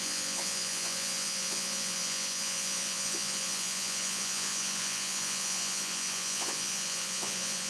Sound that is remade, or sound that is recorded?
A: remade